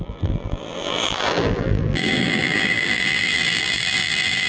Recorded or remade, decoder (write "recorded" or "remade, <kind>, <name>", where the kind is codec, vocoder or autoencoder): remade, vocoder, BigVGAN v2